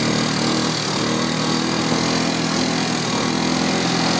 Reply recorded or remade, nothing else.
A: recorded